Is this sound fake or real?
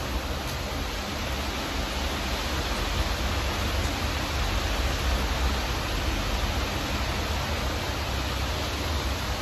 real